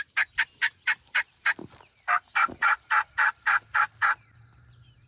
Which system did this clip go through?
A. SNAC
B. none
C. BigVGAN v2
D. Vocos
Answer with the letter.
B